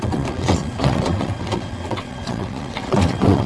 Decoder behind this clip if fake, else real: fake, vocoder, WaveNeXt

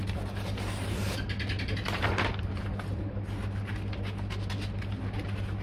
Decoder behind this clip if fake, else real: real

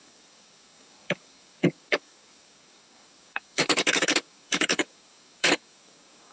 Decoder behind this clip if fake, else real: fake, codec, DAC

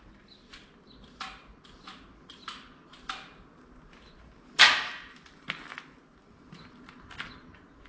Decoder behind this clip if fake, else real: real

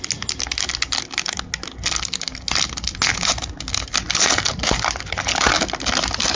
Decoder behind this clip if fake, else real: real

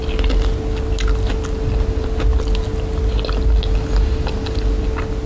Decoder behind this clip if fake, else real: real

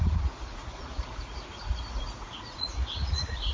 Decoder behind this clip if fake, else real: fake, vocoder, Vocos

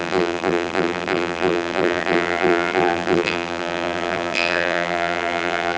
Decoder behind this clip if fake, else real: fake, vocoder, BigVGAN v2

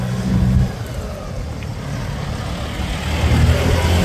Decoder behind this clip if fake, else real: real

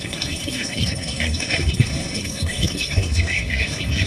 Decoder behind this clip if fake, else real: fake, codec, SNAC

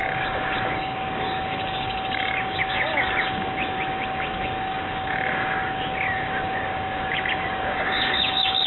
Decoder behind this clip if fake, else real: fake, codec, DAC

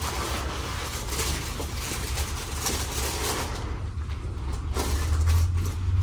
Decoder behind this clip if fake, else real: real